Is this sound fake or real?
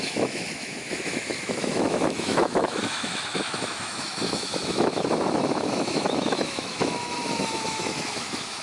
fake